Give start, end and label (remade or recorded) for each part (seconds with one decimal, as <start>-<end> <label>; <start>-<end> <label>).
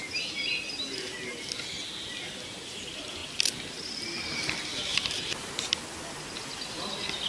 0.0-4.9 recorded; 4.9-5.6 remade; 5.6-7.3 recorded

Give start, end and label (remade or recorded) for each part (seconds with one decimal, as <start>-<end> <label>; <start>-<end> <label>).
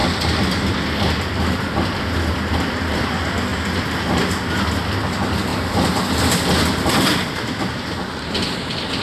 0.0-3.5 recorded; 3.5-4.3 remade; 4.3-9.0 recorded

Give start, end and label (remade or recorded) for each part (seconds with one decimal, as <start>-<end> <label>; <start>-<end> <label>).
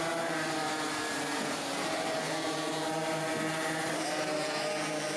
0.0-3.3 remade; 3.3-3.8 recorded; 3.8-5.2 remade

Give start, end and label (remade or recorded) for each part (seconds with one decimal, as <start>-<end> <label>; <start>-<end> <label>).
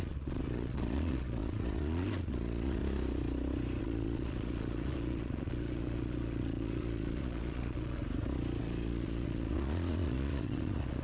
0.0-2.8 remade; 2.8-3.8 recorded; 3.8-8.0 remade; 8.0-8.6 recorded; 8.6-11.0 remade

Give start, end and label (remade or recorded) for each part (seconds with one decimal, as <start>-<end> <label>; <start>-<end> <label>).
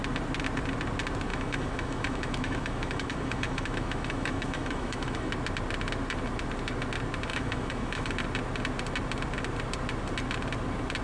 0.0-1.3 recorded; 1.3-5.3 remade; 5.3-7.3 recorded; 7.3-8.1 remade; 8.1-11.0 recorded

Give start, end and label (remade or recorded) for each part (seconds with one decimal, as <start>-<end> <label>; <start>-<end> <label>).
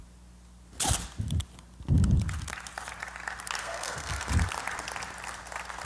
0.0-3.6 recorded; 3.6-4.3 remade; 4.3-5.8 recorded